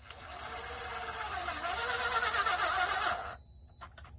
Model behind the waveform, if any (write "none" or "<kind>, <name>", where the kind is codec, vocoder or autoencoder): none